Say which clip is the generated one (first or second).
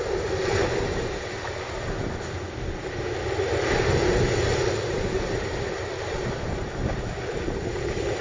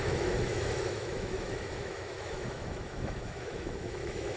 second